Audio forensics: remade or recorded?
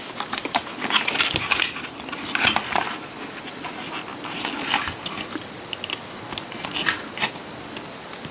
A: recorded